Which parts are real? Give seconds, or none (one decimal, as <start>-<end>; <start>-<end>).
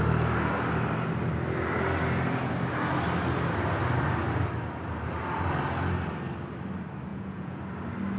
0.0-7.1; 7.6-8.2